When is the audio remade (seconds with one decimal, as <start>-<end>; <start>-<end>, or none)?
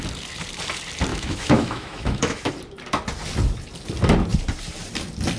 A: 1.1-2.5